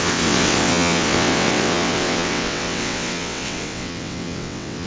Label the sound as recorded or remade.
remade